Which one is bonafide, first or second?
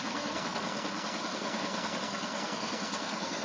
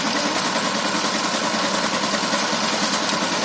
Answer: second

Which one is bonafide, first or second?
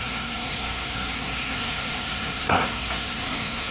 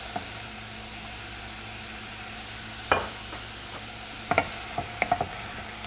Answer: second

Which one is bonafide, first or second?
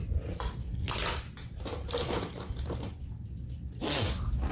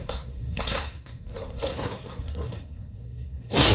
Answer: first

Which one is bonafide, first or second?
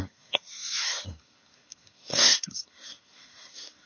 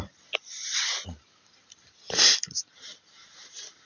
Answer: second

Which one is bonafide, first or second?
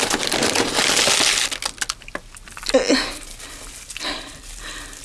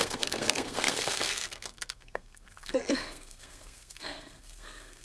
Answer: first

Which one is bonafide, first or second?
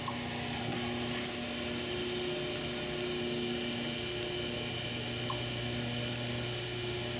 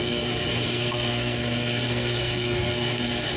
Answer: first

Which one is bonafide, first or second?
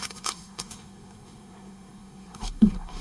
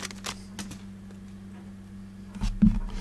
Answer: second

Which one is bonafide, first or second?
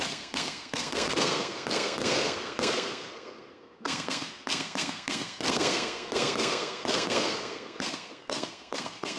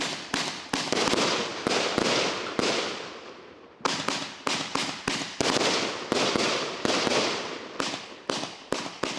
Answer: second